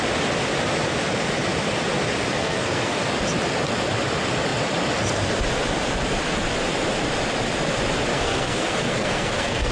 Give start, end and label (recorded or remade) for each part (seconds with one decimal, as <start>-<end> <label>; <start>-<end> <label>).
0.0-2.4 recorded; 2.4-3.0 remade; 3.0-8.1 recorded; 8.1-9.7 remade